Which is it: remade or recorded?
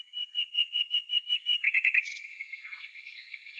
remade